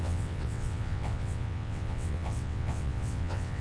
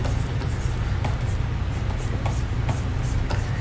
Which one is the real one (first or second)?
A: second